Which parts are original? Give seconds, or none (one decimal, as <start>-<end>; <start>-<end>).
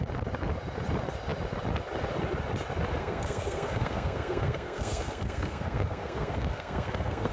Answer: 0.0-3.0